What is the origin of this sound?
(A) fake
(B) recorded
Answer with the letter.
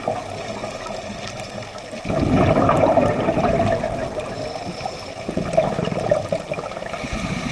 B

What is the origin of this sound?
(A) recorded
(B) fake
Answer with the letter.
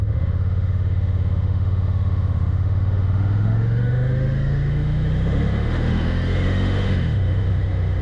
B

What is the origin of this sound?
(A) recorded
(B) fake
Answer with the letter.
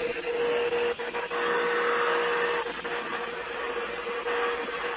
A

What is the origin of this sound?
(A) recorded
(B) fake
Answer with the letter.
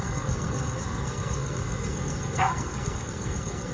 B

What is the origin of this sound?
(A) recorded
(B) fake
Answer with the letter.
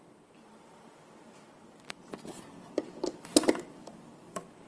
B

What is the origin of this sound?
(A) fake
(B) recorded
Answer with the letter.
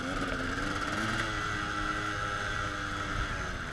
B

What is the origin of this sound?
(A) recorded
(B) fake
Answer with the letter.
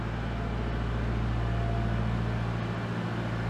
A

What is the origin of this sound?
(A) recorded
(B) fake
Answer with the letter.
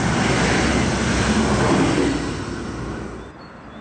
A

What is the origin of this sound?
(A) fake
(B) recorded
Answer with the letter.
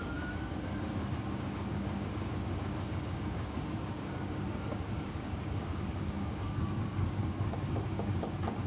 A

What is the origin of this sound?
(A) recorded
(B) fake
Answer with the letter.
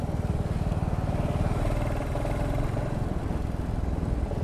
A